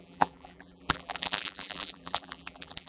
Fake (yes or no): yes